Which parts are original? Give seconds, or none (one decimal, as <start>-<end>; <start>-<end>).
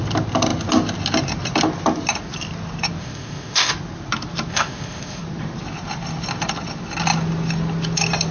0.0-3.0; 3.7-4.5; 5.2-8.3